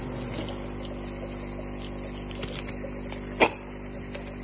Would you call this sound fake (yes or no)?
no